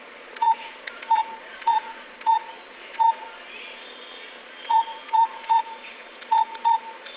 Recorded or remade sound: remade